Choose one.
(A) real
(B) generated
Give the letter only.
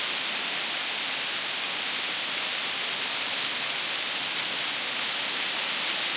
A